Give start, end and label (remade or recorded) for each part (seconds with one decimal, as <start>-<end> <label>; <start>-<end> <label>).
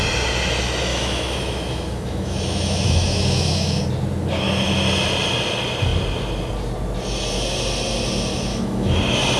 0.0-0.9 recorded; 0.9-3.8 remade; 3.8-8.5 recorded; 8.5-9.0 remade; 9.0-9.4 recorded